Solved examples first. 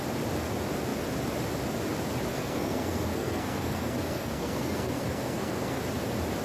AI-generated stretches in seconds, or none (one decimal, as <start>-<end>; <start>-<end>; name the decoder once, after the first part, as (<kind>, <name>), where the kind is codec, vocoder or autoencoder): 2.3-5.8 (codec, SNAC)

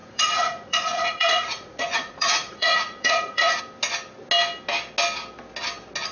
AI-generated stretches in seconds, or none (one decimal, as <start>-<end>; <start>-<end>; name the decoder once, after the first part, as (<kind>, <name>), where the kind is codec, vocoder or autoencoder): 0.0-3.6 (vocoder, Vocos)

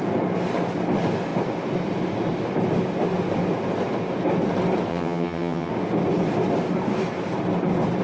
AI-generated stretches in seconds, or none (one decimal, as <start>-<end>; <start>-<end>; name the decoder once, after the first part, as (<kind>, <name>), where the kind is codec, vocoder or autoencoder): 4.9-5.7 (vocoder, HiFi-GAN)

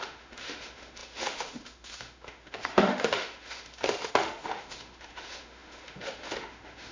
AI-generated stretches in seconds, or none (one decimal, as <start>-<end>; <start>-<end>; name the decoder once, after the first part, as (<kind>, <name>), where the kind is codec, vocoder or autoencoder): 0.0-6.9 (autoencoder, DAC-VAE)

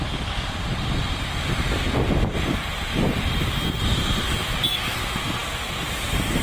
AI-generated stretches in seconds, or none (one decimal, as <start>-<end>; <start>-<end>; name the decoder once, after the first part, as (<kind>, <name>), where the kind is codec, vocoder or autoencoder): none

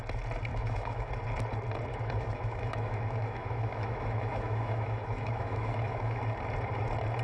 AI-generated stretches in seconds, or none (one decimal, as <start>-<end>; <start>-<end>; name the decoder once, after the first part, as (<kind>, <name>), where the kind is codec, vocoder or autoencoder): 0.5-1.1 (autoencoder, DAC-VAE); 1.9-6.2

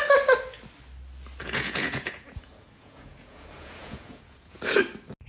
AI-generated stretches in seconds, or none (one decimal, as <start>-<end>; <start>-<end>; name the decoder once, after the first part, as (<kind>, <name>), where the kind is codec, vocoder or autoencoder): 1.4-4.6 (vocoder, Vocos)